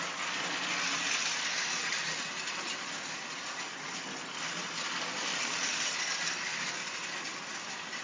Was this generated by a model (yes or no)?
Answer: no